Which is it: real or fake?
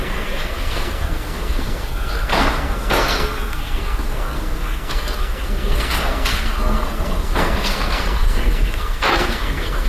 fake